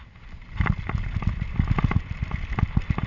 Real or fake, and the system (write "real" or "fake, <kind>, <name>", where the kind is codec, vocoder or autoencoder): real